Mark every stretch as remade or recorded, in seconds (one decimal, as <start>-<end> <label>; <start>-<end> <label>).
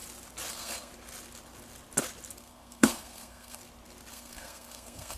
0.0-0.5 recorded; 0.5-0.9 remade; 0.9-2.4 recorded; 2.4-3.6 remade; 3.6-4.1 recorded; 4.1-5.2 remade